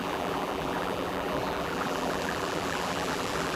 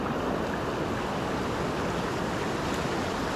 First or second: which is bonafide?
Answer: second